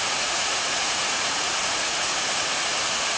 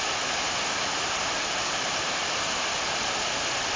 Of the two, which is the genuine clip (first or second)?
second